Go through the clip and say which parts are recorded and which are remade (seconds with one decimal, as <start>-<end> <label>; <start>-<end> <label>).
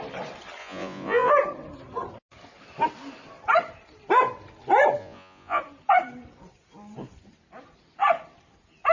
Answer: 0.0-0.6 recorded; 0.6-1.3 remade; 1.3-5.0 recorded; 5.0-5.6 remade; 5.6-8.9 recorded